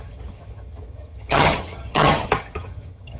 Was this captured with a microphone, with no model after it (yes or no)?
no